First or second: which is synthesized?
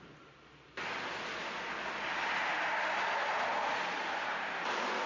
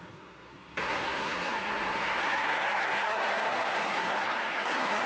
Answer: second